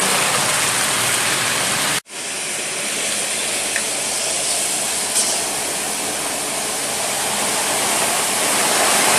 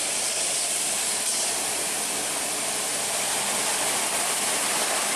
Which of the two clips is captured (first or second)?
first